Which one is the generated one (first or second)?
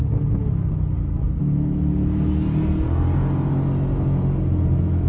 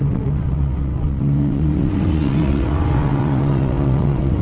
second